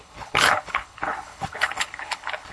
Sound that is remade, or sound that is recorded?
remade